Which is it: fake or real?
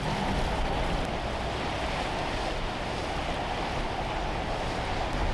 real